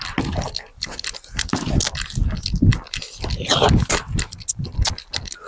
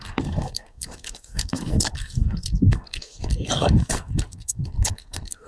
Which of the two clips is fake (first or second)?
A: second